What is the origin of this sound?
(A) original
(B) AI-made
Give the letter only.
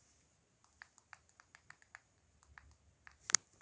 B